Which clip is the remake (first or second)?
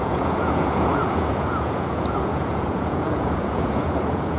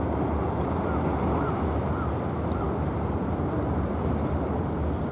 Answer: first